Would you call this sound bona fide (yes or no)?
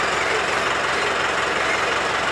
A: yes